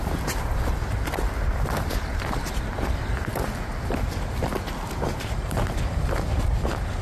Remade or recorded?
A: recorded